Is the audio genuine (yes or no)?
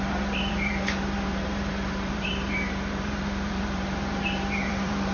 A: no